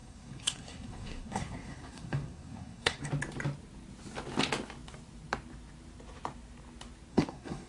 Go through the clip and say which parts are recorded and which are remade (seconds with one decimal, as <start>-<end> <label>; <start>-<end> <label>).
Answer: 0.0-3.1 remade; 3.1-7.1 recorded; 7.1-7.7 remade